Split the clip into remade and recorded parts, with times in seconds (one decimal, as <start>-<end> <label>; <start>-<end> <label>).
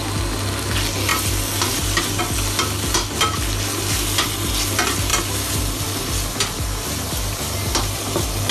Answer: 0.0-8.5 recorded